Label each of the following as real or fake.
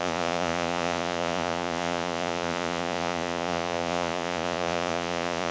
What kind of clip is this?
fake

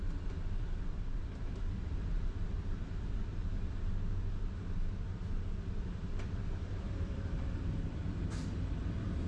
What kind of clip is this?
fake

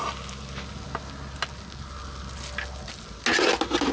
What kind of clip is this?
real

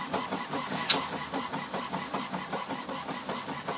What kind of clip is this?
real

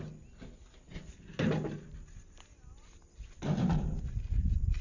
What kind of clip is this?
real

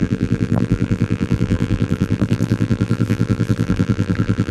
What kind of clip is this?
fake